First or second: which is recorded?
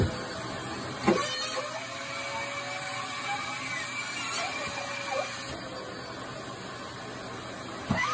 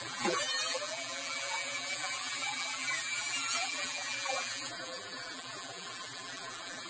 first